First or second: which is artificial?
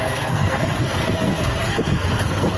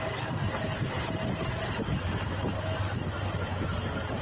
first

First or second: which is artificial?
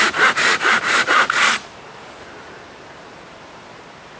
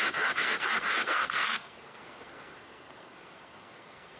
second